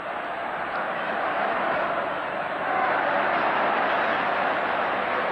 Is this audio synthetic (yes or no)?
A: no